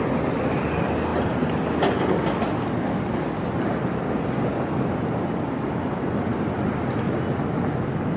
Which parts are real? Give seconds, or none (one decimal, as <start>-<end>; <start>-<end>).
0.0-8.2